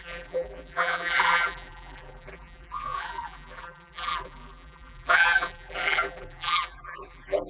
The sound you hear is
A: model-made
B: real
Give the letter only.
A